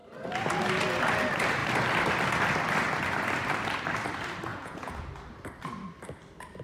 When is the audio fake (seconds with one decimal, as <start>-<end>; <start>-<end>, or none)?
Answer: 4.5-5.1